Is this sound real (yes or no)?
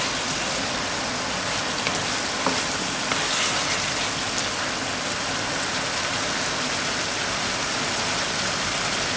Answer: yes